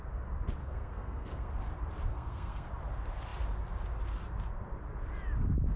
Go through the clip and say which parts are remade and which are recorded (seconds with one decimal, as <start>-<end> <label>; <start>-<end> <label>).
0.0-0.6 recorded; 0.6-1.5 remade; 1.5-2.1 recorded; 2.1-2.7 remade; 2.7-5.8 recorded